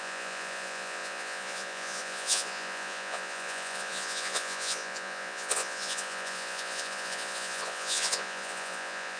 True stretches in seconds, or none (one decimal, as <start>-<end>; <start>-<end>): none